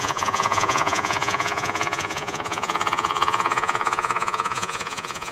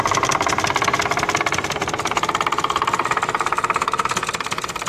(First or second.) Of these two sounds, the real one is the second